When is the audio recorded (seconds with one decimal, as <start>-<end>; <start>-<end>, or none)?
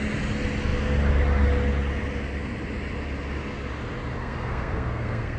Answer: 0.0-4.2